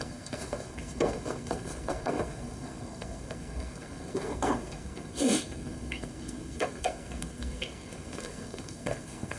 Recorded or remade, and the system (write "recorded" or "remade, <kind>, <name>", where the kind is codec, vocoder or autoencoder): remade, codec, SNAC